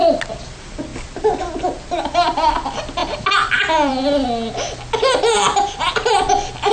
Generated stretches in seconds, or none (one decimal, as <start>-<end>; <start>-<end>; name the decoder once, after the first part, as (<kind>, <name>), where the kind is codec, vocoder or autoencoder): none